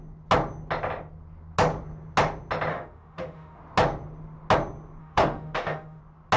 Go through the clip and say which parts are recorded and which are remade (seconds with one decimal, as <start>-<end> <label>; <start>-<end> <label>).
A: 0.0-2.7 recorded; 2.7-3.6 remade; 3.6-5.0 recorded; 5.0-6.0 remade; 6.0-6.4 recorded